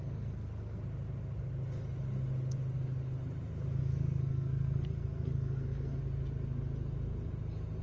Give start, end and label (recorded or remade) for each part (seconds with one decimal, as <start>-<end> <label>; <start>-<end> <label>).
0.0-0.8 remade; 0.8-3.8 recorded; 3.8-6.0 remade; 6.0-7.8 recorded